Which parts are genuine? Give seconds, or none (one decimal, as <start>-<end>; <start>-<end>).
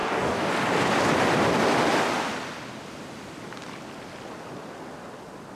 0.5-5.6